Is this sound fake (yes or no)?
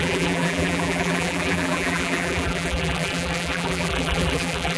yes